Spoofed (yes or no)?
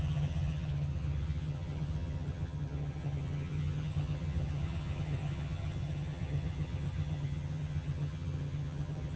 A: yes